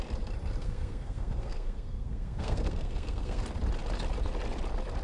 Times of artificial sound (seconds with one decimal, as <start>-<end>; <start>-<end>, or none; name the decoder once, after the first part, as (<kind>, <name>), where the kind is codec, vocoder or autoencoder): 0.6-3.4 (codec, SNAC)